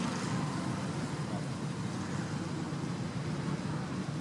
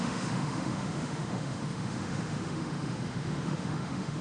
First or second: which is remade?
second